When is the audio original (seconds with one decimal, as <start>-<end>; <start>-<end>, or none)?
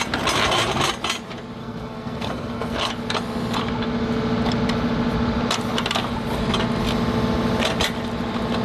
0.0-1.6; 2.9-8.6